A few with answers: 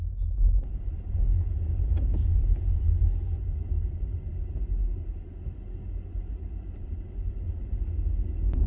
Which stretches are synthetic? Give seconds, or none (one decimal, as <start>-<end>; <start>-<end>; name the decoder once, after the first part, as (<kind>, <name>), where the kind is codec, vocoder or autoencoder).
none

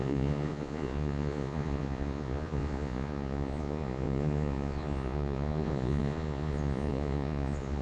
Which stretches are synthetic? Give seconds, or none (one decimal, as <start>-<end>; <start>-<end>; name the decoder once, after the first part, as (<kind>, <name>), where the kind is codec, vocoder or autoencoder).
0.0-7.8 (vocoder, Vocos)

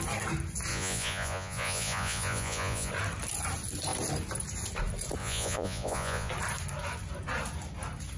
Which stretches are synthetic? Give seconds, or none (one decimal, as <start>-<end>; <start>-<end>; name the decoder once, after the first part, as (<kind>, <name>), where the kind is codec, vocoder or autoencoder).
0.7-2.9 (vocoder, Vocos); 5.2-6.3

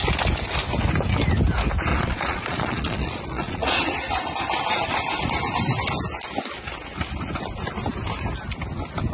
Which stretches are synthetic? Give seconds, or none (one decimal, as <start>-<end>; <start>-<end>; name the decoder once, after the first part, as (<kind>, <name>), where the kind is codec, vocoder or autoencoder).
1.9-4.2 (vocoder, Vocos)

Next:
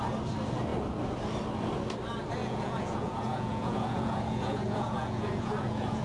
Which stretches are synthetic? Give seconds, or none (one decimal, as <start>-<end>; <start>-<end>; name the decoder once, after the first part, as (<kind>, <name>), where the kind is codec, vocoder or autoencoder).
2.4-6.0 (vocoder, Vocos)

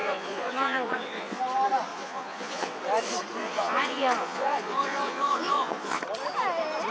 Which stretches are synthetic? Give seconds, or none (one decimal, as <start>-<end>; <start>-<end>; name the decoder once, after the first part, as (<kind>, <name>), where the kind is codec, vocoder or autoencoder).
0.0-1.4 (vocoder, Vocos); 1.9-2.8; 3.4-6.0

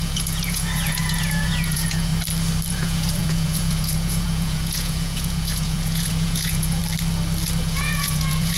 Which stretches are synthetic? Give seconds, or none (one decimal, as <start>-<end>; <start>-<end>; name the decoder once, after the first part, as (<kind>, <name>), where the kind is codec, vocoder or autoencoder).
0.0-2.1 (vocoder, Vocos); 2.7-6.8; 7.6-8.6

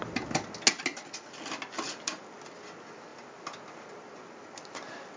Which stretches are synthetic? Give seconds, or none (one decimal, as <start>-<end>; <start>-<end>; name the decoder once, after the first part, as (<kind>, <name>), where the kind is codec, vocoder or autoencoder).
none